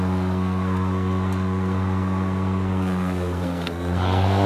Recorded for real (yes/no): no